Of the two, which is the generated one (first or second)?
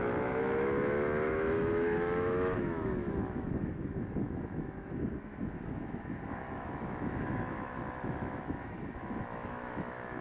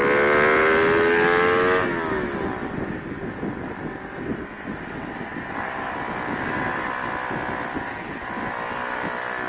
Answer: first